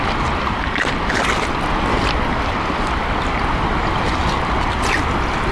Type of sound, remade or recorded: recorded